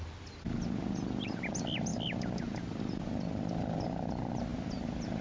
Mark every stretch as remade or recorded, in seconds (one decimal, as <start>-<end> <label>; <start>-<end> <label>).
0.0-5.2 recorded